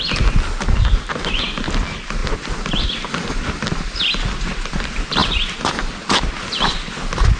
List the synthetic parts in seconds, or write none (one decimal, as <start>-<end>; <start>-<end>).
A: none